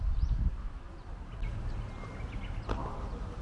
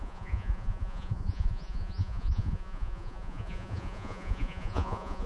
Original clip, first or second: first